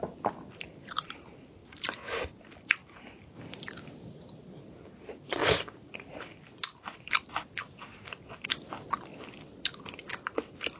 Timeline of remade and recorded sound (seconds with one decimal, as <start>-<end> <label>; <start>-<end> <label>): 0.0-10.8 recorded